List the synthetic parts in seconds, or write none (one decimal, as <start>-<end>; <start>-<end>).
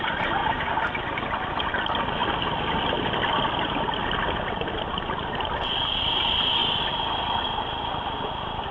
none